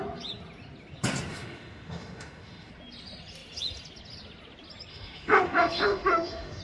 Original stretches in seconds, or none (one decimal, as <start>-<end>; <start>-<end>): 0.0-1.3; 2.7-4.9